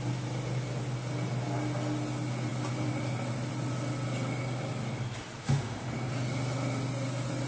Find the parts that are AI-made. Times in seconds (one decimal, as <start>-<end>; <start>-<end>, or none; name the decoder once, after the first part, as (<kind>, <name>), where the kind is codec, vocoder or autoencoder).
5.4-5.9 (autoencoder, DAC-VAE)